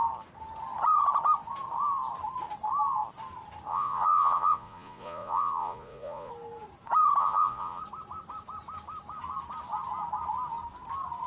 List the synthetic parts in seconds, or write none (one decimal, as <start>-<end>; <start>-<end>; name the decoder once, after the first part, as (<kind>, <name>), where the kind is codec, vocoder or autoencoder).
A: 3.7-6.3 (vocoder, Vocos); 7.2-7.8